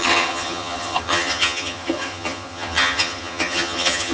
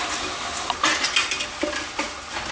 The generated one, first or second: first